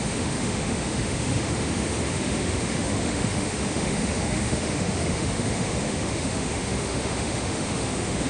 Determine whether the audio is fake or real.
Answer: fake